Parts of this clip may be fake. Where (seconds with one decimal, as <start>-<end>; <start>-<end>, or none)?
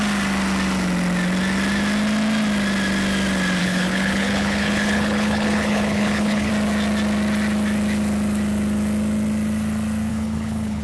3.6-6.5; 10.1-10.8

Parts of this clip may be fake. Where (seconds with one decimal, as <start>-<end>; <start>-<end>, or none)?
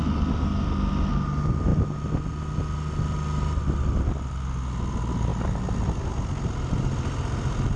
5.3-6.0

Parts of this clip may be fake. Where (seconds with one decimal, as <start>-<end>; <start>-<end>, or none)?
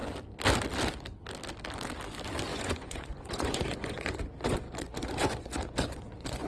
2.5-6.5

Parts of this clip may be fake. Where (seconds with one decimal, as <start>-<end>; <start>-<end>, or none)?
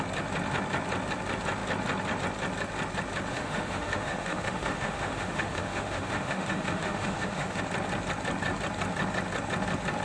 3.3-7.6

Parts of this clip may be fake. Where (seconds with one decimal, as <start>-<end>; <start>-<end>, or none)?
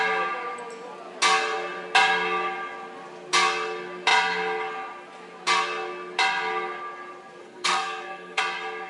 7.4-8.4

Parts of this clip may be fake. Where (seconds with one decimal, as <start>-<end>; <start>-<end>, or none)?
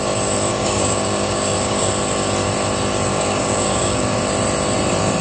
0.5-1.9; 3.1-4.2